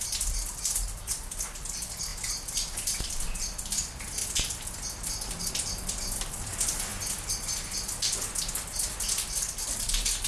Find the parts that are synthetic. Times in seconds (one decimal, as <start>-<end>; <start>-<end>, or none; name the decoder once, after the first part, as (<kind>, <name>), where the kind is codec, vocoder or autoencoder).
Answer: 0.0-2.1 (vocoder, BigVGAN v2); 3.0-4.2; 5.5-6.9; 9.6-10.3